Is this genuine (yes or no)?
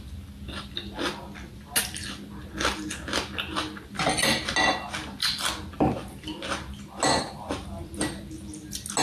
yes